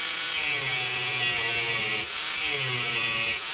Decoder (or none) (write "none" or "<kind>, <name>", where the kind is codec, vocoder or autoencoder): none